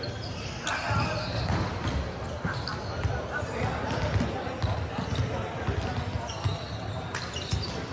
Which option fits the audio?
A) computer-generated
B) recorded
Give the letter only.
B